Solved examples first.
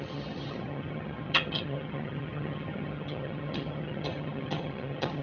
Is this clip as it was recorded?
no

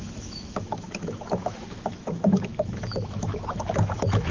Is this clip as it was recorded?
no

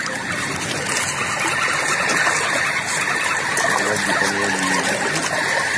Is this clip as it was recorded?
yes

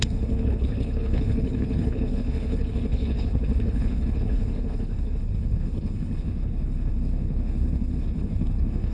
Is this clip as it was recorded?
no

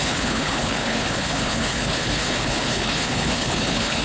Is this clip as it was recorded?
no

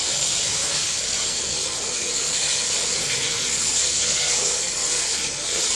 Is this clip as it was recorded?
no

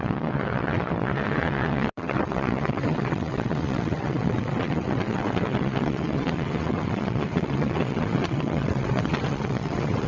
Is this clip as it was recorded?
no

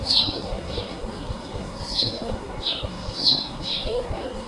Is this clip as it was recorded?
no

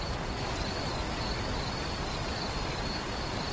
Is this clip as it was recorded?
yes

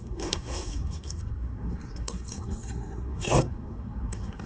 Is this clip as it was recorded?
no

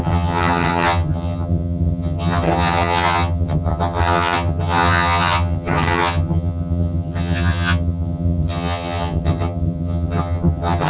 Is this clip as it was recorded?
no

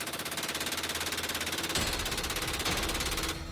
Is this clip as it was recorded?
yes